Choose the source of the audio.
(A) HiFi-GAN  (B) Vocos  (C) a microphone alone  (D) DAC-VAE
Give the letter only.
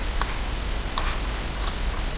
C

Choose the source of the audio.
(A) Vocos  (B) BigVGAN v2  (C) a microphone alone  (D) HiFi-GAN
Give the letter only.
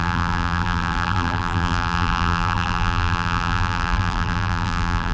B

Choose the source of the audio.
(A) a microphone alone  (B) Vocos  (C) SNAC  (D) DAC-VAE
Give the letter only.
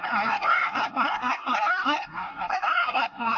C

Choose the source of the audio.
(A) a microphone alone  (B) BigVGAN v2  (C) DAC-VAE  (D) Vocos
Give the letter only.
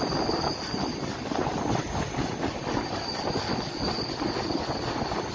A